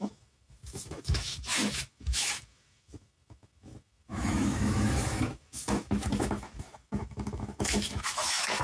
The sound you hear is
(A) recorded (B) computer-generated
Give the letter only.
B